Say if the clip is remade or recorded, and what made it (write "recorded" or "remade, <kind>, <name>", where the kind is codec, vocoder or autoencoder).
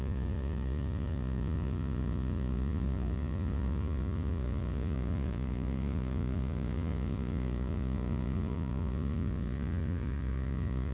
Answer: remade, vocoder, Vocos